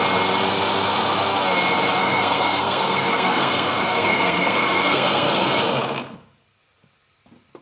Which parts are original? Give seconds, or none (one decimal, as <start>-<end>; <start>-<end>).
0.0-2.0; 5.5-7.6